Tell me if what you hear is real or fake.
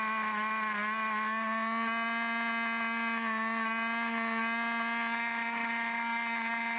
real